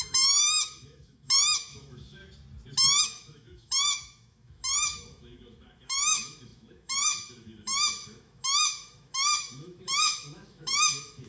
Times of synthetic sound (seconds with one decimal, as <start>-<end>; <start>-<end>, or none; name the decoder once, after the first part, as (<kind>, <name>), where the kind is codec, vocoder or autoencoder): 0.0-2.2 (autoencoder, DAC-VAE); 3.0-11.3